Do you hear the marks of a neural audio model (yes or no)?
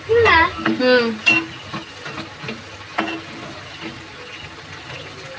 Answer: no